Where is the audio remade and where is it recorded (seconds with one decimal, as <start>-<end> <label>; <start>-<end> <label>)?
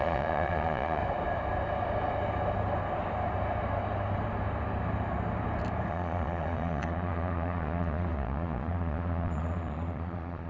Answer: 0.0-1.0 remade; 1.0-5.9 recorded; 5.9-10.5 remade